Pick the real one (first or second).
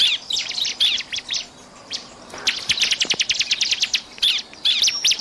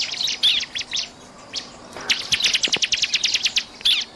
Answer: second